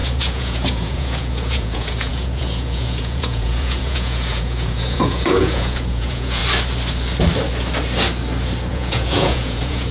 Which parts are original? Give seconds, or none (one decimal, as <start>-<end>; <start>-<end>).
6.4-8.7